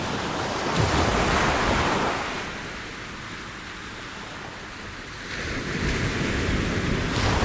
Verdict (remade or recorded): recorded